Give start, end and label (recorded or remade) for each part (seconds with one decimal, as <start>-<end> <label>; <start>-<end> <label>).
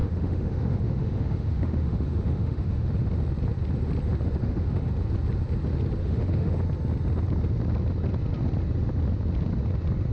0.0-2.9 remade; 2.9-4.4 recorded; 4.4-4.9 remade; 4.9-6.0 recorded; 6.0-6.6 remade; 6.6-10.1 recorded